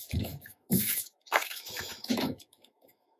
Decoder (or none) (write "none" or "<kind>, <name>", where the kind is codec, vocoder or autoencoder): autoencoder, DAC-VAE